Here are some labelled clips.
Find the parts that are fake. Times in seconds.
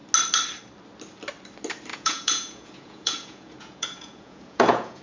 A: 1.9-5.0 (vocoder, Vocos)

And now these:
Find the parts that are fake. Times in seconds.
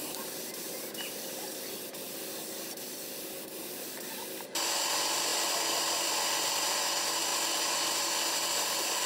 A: none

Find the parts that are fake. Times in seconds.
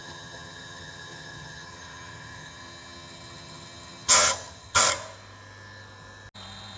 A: 0.0-4.8 (vocoder, HiFi-GAN)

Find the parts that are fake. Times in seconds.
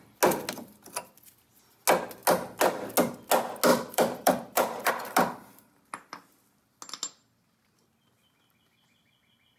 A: 3.7-4.9 (vocoder, BigVGAN v2)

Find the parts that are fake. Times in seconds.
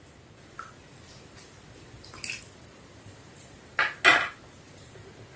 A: none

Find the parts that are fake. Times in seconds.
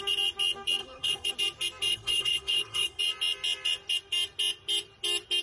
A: 0.8-1.3 (codec, HILCodec); 1.9-3.0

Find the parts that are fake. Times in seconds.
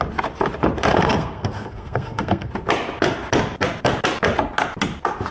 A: 0.9-2.5 (codec, SNAC)